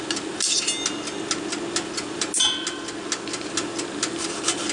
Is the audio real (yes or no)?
yes